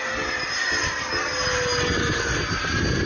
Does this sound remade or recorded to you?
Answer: recorded